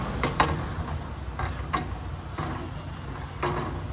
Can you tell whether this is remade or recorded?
recorded